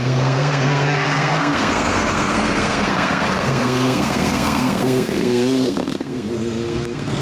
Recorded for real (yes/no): no